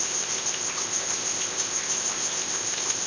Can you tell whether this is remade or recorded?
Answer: remade